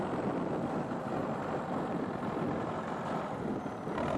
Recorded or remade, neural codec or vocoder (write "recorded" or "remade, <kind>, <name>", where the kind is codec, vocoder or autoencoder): recorded